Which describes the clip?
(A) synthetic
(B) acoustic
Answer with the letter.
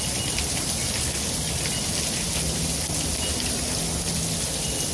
B